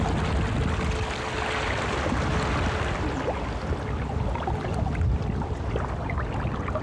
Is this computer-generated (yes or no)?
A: no